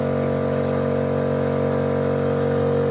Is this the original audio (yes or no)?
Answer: yes